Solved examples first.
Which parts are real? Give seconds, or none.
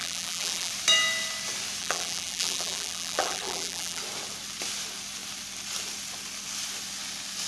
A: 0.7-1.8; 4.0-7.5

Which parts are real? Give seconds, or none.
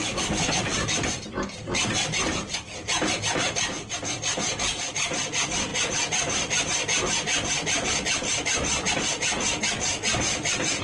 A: 5.7-8.9; 9.3-10.2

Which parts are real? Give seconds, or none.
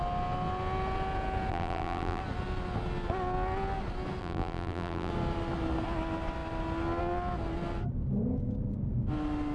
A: 0.0-1.5; 2.2-4.2; 5.1-9.5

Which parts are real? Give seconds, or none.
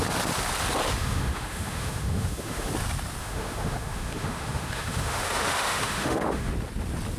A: 0.0-1.0; 2.7-3.2; 6.5-7.2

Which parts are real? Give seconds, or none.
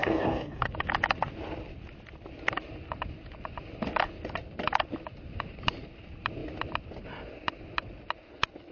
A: 0.7-8.7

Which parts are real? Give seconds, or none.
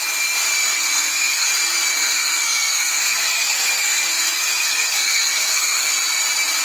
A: 0.0-0.7; 1.5-1.9; 5.9-6.6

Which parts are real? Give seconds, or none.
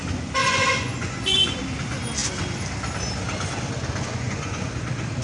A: 0.0-0.4; 1.6-4.1; 4.7-5.2